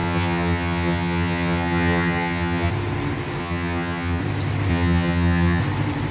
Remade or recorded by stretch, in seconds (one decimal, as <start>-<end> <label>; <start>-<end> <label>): 0.0-2.7 remade; 2.7-3.4 recorded; 3.4-4.2 remade; 4.2-4.7 recorded; 4.7-5.6 remade; 5.6-6.1 recorded